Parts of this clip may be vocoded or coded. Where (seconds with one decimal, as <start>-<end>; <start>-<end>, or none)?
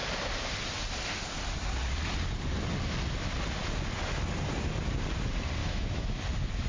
5.6-6.2